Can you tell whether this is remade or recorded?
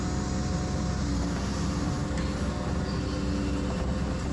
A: recorded